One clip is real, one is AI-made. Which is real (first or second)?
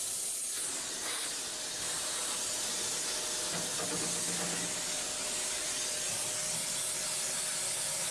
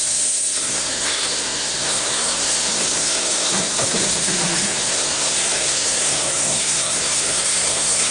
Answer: first